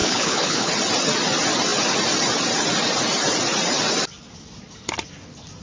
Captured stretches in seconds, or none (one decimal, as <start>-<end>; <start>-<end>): 0.7-5.6